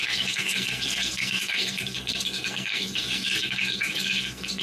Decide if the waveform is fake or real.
fake